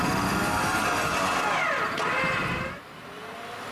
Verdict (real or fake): real